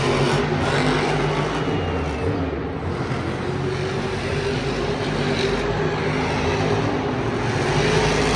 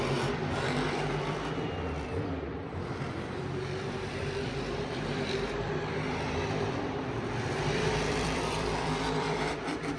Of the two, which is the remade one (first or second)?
second